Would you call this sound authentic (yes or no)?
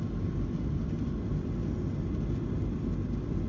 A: yes